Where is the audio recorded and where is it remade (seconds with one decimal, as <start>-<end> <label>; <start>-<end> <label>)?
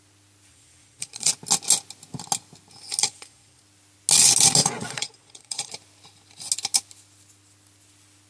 0.0-0.5 recorded; 0.5-1.3 remade; 1.3-3.0 recorded; 3.0-3.6 remade; 3.6-4.6 recorded; 4.6-5.7 remade; 5.7-8.3 recorded